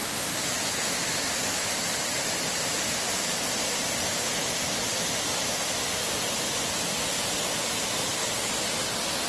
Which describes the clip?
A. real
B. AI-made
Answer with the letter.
A